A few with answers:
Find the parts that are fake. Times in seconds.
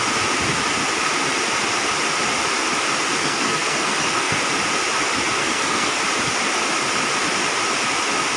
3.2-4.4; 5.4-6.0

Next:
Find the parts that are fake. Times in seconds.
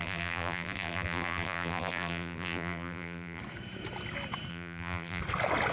0.0-3.4; 4.5-5.2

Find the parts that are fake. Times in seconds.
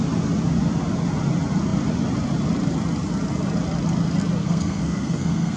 4.4-5.6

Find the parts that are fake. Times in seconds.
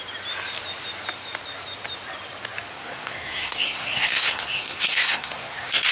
2.7-5.9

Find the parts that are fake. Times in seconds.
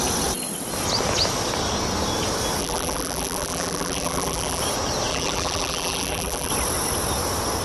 2.6-4.6; 5.1-6.5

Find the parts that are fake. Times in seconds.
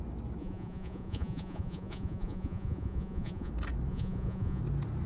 0.4-3.5; 3.9-4.6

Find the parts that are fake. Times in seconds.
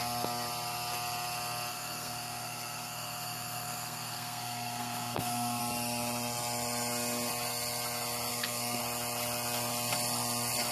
1.7-5.6; 8.3-8.8